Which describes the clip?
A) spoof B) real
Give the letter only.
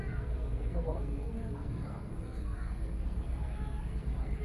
A